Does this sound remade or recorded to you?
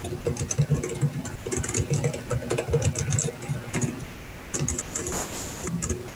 recorded